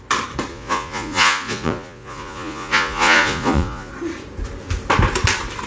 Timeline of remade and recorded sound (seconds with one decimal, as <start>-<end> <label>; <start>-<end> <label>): 0.0-0.5 recorded; 0.5-3.9 remade; 3.9-5.7 recorded